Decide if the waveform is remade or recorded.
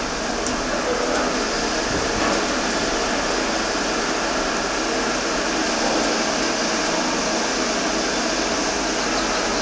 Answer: recorded